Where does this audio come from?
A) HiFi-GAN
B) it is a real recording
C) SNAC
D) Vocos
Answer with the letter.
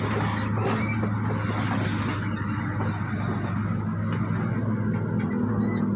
B